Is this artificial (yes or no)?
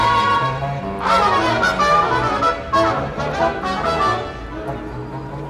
no